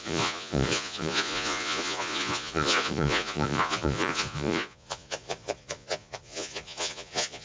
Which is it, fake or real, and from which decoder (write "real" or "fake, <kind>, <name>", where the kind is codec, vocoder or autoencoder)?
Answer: fake, vocoder, Vocos